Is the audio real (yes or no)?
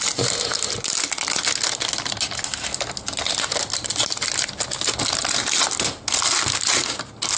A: yes